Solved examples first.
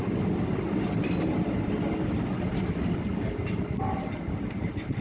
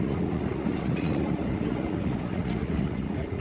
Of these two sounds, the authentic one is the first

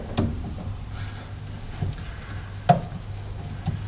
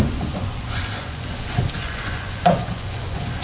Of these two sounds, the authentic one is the first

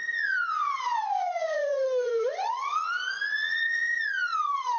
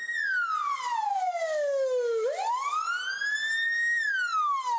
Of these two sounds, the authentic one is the second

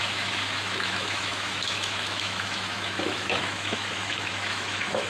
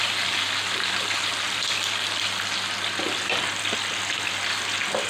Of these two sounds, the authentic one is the second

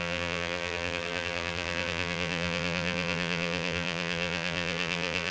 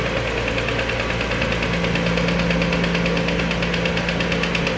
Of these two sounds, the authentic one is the second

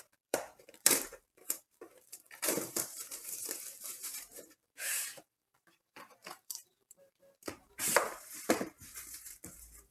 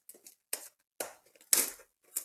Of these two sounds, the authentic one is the second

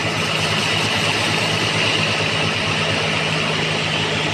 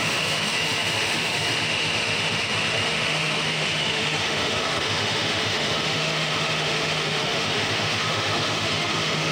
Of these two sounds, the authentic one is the first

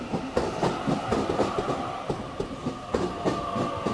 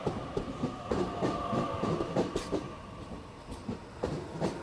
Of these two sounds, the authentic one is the first